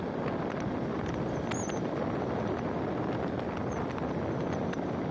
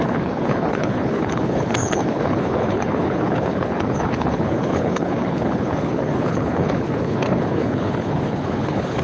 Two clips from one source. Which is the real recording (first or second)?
first